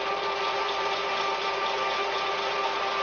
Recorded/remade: recorded